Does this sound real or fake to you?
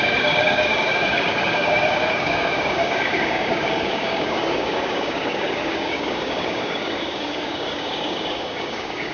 fake